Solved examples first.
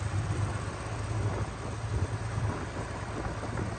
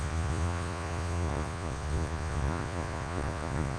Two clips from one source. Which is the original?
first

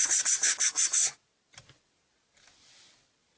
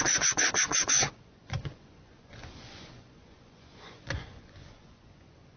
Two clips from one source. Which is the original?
first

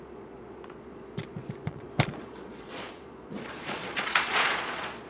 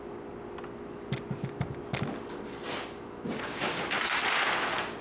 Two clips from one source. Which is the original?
second